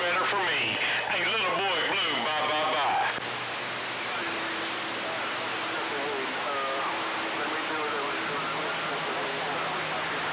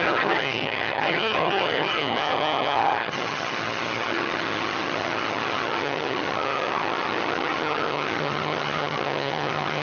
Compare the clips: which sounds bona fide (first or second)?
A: first